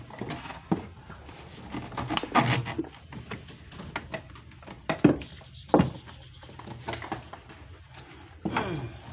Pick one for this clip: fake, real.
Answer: real